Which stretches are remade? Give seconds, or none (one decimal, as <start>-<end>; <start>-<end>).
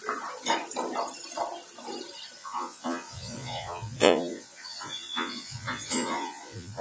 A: 2.4-6.8